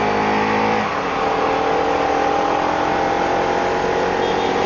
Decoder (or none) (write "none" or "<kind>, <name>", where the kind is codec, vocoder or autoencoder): none